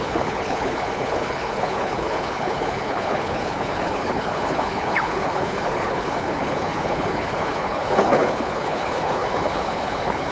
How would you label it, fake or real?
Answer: fake